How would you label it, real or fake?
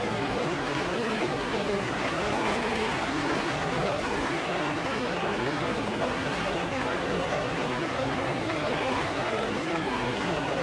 fake